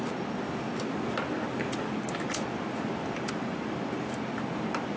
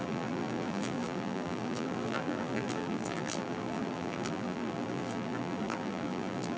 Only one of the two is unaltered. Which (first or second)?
first